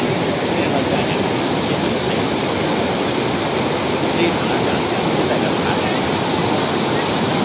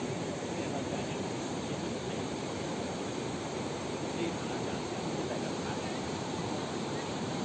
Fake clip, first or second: second